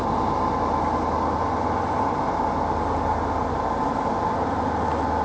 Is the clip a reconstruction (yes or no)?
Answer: no